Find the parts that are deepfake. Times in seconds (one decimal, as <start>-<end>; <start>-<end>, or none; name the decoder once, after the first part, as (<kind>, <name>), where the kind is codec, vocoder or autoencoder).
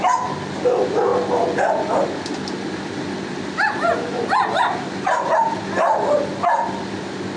none